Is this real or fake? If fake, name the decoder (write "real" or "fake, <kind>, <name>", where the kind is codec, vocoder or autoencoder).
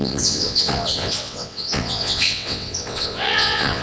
fake, vocoder, WaveNeXt